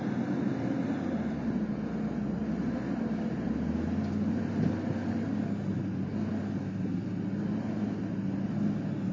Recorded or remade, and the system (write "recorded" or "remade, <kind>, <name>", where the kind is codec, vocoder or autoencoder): recorded